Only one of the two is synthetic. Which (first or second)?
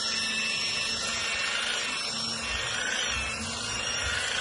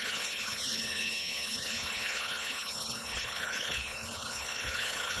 second